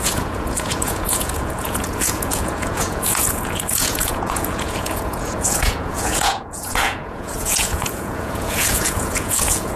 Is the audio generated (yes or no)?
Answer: yes